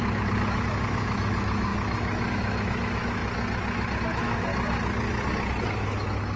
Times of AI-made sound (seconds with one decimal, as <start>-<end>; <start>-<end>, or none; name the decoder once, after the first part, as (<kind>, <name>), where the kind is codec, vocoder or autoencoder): 0.0-3.2 (autoencoder, DAC-VAE); 4.0-4.5; 5.7-6.4